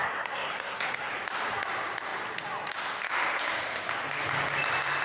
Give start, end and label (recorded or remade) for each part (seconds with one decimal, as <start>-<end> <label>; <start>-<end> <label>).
0.0-1.1 remade; 1.1-5.0 recorded